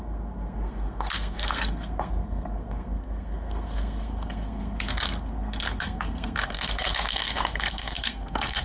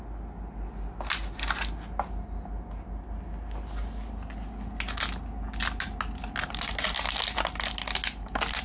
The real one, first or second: second